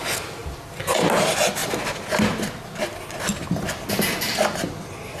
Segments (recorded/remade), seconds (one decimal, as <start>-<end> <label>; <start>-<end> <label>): 0.0-5.2 recorded